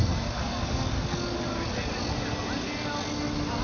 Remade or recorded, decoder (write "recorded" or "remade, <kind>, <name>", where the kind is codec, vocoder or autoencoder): recorded